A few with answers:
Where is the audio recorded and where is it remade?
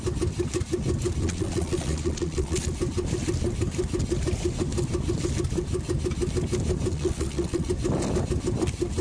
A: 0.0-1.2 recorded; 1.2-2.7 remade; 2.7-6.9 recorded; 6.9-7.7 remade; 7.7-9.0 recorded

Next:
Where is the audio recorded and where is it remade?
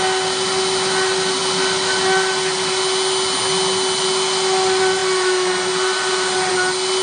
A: 0.0-7.0 recorded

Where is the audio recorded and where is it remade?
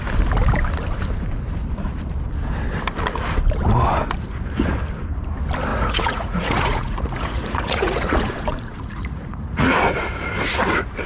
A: 0.0-5.7 recorded; 5.7-9.8 remade; 9.8-11.1 recorded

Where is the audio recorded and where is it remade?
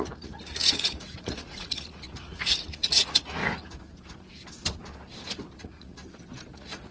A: 0.0-3.4 remade; 3.4-5.6 recorded; 5.6-6.0 remade; 6.0-6.5 recorded; 6.5-6.9 remade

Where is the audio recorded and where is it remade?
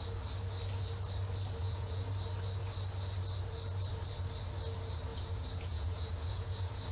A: 0.0-1.6 recorded; 1.6-2.1 remade; 2.1-5.1 recorded; 5.1-6.9 remade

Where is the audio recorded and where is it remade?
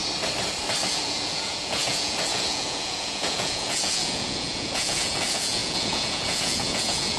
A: 0.0-0.9 recorded; 0.9-7.2 remade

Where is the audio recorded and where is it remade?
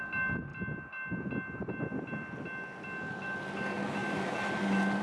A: 0.0-5.0 recorded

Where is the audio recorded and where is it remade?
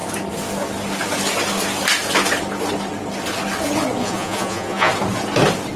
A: 0.0-4.0 recorded; 4.0-4.9 remade; 4.9-5.8 recorded